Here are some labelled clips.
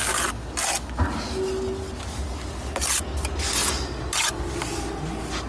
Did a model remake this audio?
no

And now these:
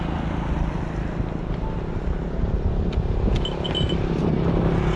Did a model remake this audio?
no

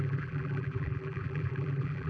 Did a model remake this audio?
yes